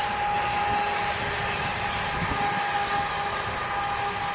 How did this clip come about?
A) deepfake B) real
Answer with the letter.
B